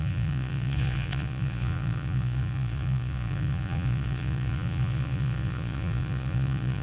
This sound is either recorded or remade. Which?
remade